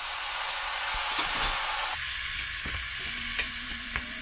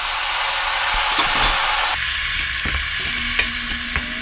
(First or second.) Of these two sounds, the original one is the second